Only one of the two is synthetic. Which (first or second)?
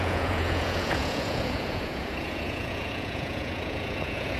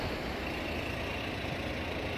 first